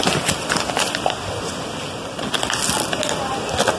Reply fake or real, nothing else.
real